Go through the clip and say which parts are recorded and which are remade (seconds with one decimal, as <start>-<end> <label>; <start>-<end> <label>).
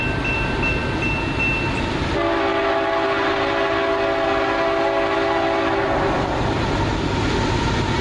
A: 0.0-8.0 recorded